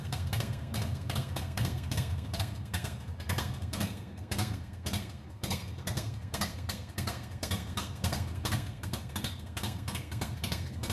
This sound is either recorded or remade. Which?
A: remade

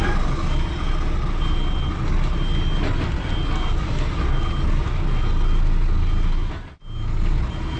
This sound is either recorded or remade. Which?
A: recorded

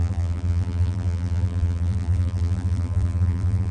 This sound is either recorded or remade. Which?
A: remade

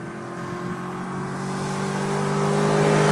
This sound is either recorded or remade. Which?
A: recorded